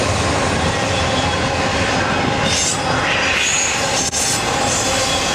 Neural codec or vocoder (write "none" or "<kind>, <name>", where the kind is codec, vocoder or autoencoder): none